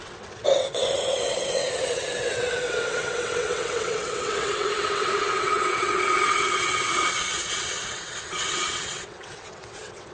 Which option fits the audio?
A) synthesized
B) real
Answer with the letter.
A